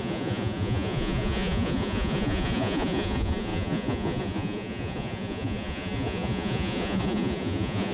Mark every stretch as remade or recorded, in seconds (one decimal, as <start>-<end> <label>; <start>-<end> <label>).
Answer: 0.0-7.9 remade